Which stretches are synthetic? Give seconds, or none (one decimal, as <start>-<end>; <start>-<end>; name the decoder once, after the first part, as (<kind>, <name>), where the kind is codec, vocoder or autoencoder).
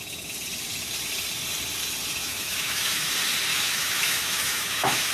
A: 2.2-3.1 (autoencoder, DAC-VAE); 3.5-5.1